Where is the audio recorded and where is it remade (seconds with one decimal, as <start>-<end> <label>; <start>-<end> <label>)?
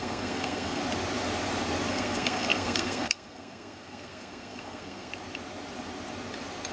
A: 0.0-0.8 remade; 0.8-1.9 recorded; 1.9-5.1 remade; 5.1-6.7 recorded